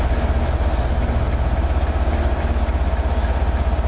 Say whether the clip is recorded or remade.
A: recorded